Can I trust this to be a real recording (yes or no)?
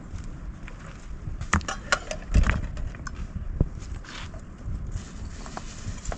yes